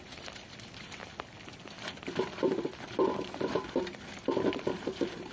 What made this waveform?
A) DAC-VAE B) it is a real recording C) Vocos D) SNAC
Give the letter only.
B